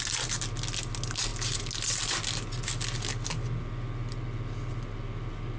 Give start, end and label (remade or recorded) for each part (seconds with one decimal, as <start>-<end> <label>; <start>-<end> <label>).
0.0-5.6 recorded